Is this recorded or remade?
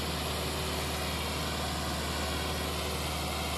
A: recorded